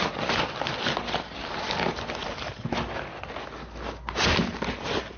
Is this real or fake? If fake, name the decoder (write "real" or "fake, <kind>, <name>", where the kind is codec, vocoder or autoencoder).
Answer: real